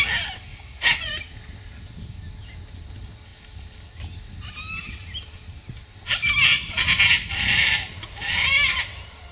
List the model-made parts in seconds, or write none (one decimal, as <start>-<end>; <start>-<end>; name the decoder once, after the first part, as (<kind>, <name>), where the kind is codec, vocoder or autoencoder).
0.5-1.1 (vocoder, Vocos)